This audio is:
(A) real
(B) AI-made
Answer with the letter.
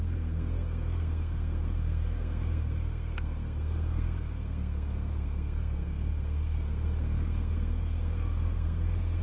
B